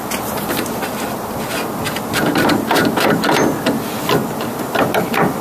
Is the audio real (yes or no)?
yes